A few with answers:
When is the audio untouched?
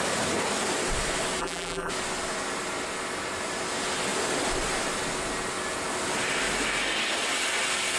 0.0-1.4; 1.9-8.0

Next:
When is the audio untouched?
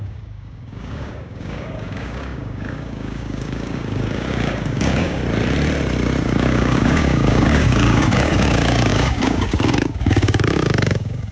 5.2-6.2